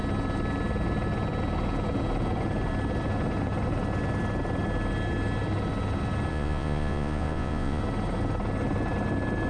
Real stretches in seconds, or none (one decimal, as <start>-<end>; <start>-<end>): 0.0-6.3; 7.8-9.5